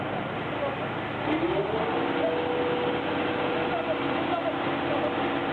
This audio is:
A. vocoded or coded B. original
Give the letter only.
B